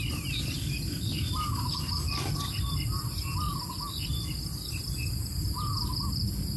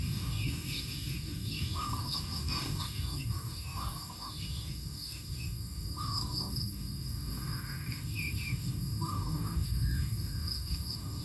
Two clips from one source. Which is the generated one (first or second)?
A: second